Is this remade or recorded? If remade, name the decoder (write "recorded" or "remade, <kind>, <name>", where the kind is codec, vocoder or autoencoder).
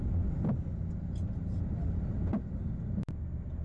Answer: recorded